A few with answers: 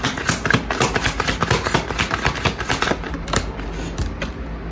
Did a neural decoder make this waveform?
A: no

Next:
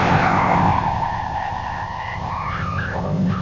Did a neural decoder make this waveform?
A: yes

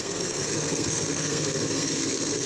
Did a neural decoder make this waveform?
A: yes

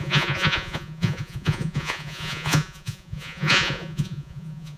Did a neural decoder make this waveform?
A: yes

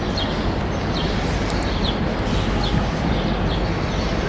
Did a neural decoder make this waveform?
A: no